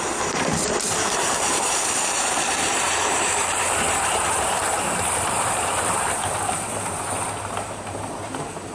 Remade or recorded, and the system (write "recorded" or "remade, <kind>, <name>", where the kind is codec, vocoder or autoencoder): remade, vocoder, BigVGAN v2